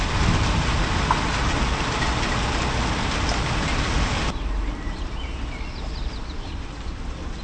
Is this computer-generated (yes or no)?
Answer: no